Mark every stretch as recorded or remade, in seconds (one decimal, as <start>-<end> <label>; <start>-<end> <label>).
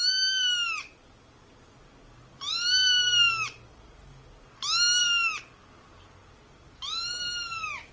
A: 0.0-7.9 recorded